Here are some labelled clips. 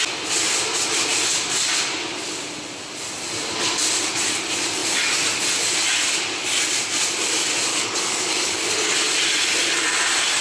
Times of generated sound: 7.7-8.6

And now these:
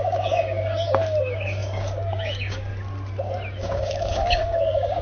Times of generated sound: 0.0-2.7; 3.6-5.0